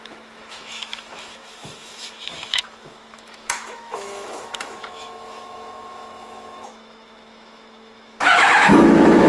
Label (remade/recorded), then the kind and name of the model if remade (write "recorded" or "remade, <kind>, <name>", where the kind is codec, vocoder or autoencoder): remade, autoencoder, DAC-VAE